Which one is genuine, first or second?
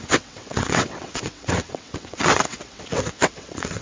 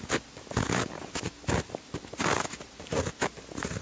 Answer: second